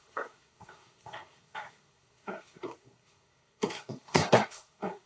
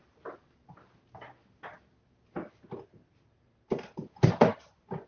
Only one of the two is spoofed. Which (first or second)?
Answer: first